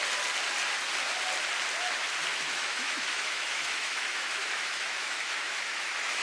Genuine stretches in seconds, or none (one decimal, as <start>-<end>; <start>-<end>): 0.0-2.3